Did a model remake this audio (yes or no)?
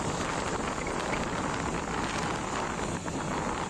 no